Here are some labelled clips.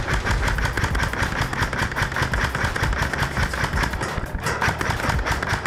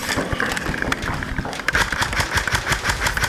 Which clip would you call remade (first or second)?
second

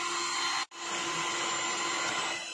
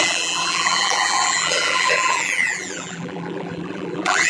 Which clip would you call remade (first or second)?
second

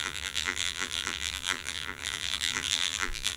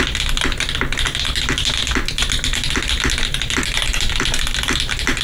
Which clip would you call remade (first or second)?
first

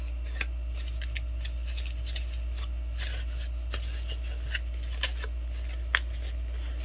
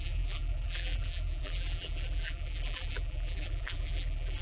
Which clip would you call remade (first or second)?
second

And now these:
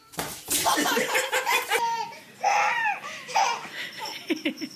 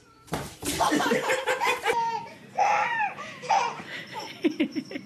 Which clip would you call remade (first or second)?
second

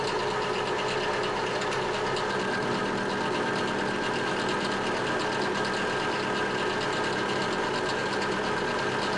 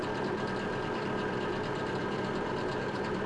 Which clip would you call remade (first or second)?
second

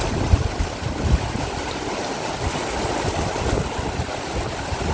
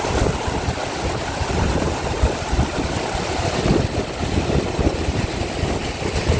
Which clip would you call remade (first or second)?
second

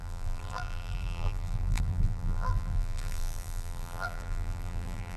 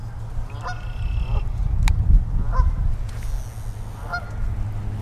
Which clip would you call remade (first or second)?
first